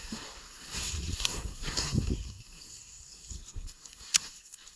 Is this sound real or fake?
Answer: fake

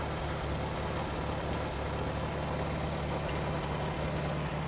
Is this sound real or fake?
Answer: real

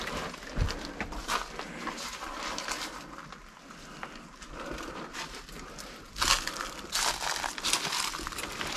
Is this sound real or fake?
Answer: real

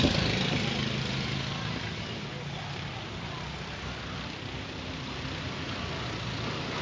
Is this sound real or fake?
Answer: real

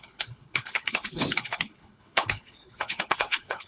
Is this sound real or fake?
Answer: fake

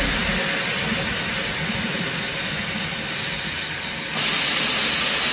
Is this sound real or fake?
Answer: real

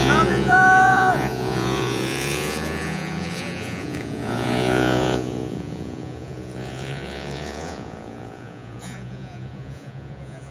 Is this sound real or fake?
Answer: fake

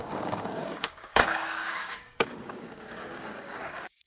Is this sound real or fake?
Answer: fake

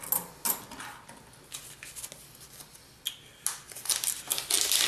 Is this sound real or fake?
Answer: real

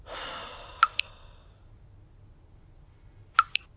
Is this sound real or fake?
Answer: real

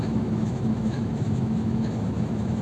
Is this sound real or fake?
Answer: fake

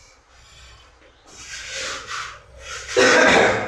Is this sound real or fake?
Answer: real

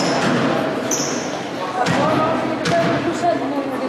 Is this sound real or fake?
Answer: real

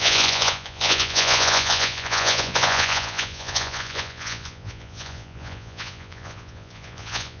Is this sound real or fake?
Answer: fake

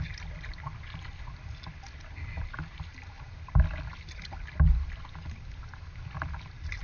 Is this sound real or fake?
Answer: real